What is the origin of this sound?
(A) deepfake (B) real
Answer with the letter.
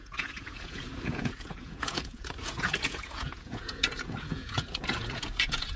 A